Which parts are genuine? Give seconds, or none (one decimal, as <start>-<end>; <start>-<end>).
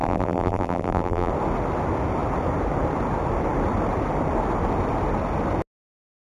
1.3-6.4